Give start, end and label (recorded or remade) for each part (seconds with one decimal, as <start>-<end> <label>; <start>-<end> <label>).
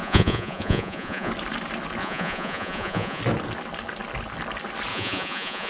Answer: 0.0-1.3 remade; 1.3-2.0 recorded; 2.0-3.2 remade; 3.2-4.9 recorded; 4.9-5.7 remade